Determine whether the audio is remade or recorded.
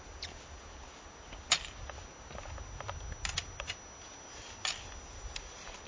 recorded